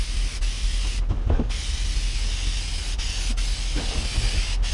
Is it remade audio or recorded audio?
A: recorded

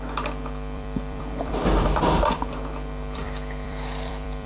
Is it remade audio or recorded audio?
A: remade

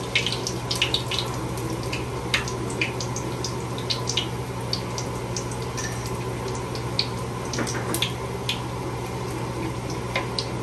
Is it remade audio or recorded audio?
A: recorded